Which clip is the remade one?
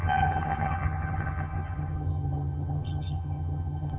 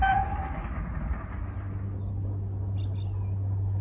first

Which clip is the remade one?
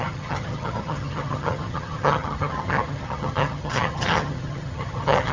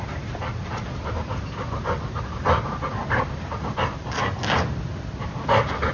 first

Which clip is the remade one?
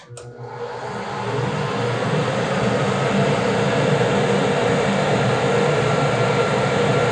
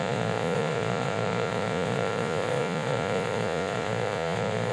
second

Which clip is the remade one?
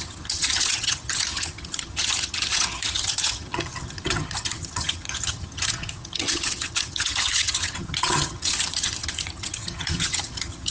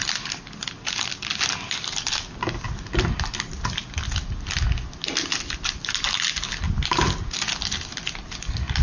first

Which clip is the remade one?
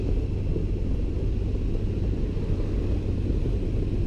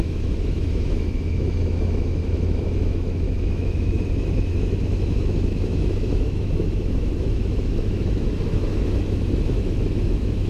second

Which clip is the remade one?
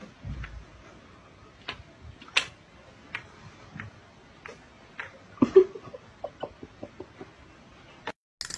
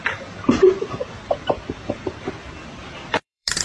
second